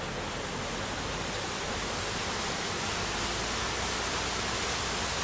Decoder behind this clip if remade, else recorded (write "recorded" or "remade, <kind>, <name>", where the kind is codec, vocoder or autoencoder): recorded